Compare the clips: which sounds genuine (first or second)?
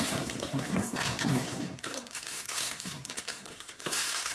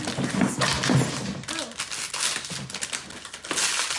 second